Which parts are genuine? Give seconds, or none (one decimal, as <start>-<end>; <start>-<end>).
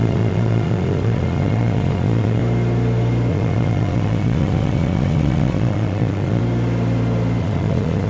2.4-3.3; 6.4-7.4